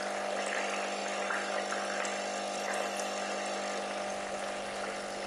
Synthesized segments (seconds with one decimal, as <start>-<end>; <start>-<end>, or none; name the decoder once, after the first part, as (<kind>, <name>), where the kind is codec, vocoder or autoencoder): none